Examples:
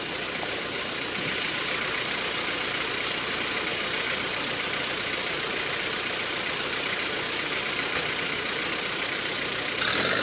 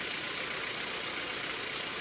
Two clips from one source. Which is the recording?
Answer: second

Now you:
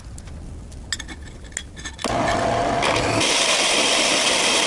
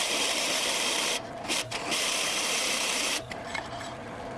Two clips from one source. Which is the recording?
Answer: first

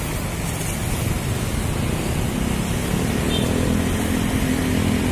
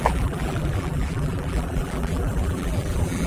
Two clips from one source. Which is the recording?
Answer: first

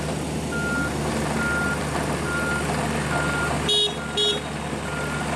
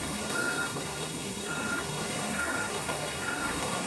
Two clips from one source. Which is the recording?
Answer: first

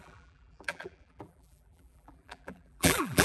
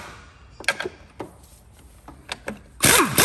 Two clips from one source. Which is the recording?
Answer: second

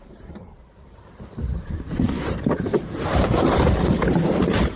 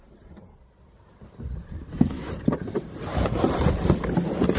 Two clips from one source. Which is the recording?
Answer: second